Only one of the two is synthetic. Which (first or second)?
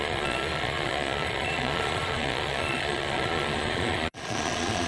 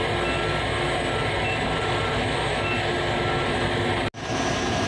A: first